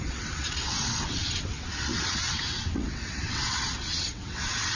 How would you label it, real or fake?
fake